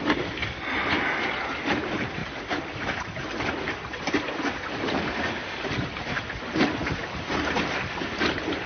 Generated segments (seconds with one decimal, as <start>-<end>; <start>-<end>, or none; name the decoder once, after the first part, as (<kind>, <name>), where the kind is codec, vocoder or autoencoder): 5.4-8.7 (vocoder, BigVGAN v2)